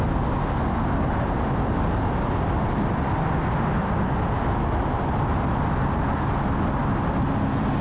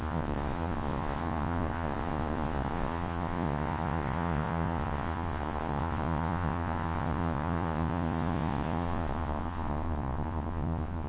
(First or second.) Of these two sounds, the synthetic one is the second